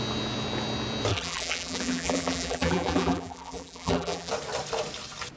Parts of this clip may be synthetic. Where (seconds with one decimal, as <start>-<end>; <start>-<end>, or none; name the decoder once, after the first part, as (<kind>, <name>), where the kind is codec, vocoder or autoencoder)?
1.1-4.3 (vocoder, BigVGAN v2)